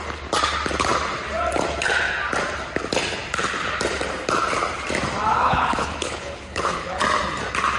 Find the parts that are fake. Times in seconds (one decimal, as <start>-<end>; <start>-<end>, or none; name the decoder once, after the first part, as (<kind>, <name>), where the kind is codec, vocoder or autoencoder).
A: 5.3-7.0 (codec, HILCodec)